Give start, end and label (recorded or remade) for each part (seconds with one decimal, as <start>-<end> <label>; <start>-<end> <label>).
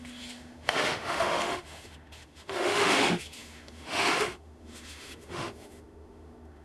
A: 0.0-6.6 remade